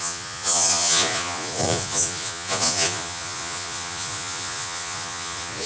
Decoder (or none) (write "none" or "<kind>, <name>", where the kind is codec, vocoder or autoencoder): vocoder, Vocos